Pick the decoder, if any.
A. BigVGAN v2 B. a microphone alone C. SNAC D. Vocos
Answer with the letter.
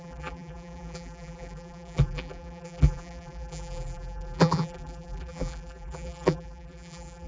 A